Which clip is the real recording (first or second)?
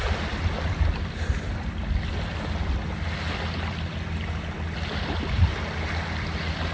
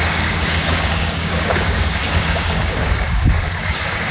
first